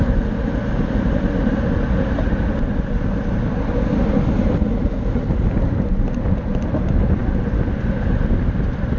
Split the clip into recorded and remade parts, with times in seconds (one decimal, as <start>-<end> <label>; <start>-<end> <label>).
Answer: 0.0-9.0 recorded